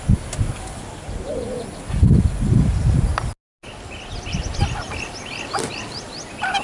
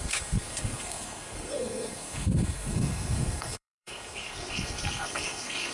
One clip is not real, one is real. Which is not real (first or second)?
second